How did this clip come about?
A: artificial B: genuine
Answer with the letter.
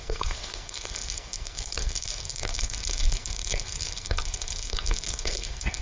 A